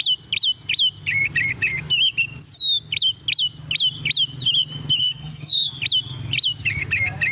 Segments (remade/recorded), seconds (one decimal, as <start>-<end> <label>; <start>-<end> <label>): 0.0-5.0 recorded; 5.0-5.7 remade; 5.7-7.3 recorded